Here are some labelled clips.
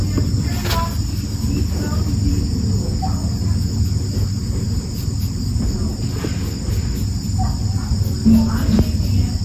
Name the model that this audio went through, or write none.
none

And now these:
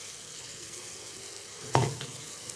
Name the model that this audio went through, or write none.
codec, SNAC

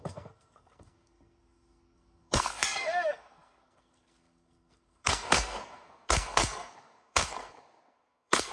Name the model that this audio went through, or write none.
codec, SNAC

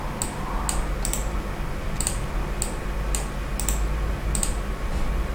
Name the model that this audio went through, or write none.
none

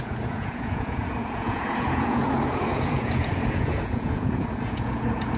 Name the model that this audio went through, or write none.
vocoder, Vocos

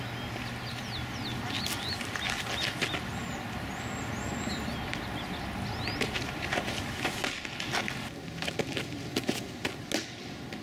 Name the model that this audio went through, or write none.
none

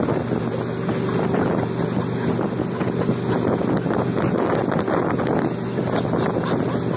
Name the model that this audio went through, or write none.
none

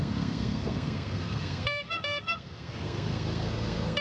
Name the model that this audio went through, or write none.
codec, SNAC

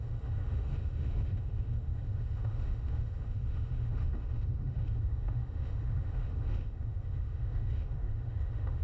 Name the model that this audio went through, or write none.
autoencoder, DAC-VAE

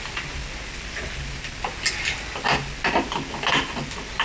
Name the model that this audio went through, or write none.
none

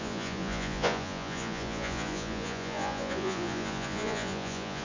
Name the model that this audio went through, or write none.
vocoder, Vocos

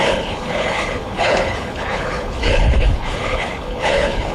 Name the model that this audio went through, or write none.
codec, HILCodec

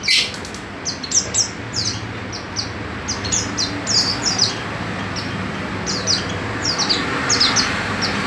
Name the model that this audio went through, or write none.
none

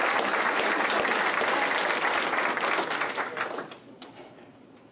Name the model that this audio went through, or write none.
none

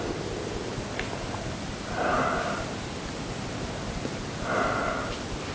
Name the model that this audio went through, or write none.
none